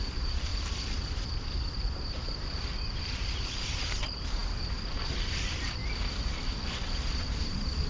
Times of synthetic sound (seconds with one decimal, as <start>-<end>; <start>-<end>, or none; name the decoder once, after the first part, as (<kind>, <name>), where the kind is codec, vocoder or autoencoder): 0.0-0.5 (vocoder, BigVGAN v2); 1.8-5.8; 6.3-7.9